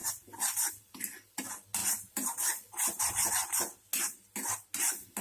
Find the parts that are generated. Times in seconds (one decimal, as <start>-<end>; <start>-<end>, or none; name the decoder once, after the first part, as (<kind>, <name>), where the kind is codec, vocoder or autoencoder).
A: 1.8-3.3 (vocoder, BigVGAN v2)